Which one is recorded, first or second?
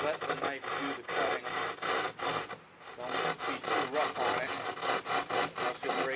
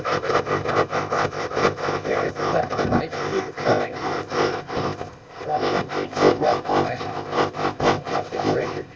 first